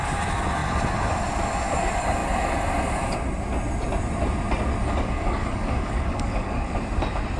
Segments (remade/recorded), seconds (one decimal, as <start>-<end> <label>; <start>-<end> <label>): 0.0-4.8 recorded; 4.8-6.7 remade; 6.7-7.4 recorded